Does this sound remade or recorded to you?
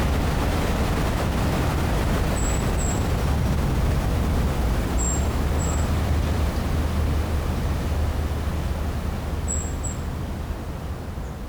recorded